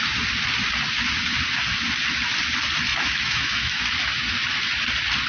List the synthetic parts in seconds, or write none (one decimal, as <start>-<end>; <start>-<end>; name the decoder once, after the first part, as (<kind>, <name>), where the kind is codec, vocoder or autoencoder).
2.9-3.8 (autoencoder, DAC-VAE)